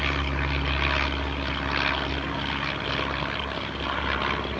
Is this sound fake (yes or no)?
no